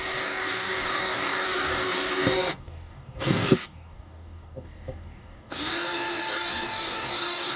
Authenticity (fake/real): fake